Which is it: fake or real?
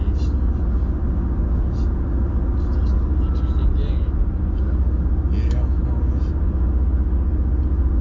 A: real